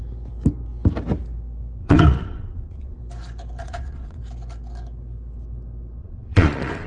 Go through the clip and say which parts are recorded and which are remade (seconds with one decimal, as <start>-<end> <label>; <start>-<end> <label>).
0.0-1.8 recorded; 1.8-3.0 remade; 3.0-3.6 recorded; 3.6-4.2 remade; 4.2-6.0 recorded; 6.0-6.9 remade